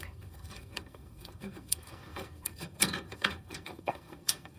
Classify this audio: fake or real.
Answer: fake